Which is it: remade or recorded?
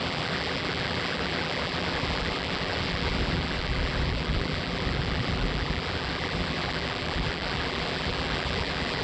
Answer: remade